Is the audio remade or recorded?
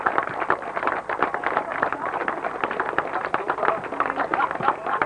remade